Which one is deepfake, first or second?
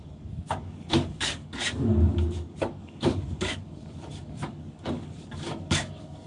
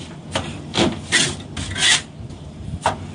first